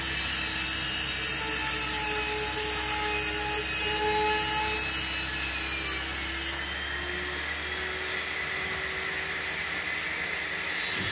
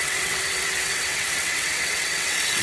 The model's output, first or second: second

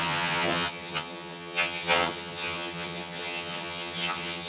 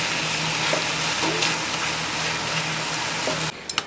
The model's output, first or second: first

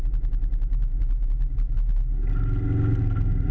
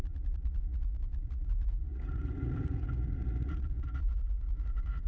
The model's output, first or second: second